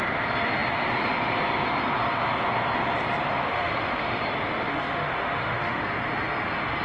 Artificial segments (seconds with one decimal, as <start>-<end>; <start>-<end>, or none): 3.5-4.2; 4.7-5.8